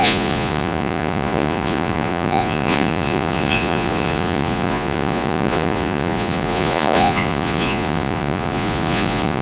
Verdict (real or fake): fake